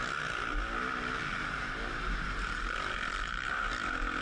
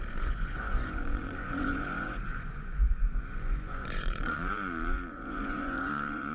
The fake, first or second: second